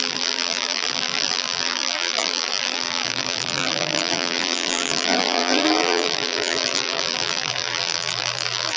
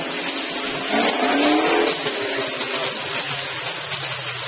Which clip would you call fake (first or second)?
first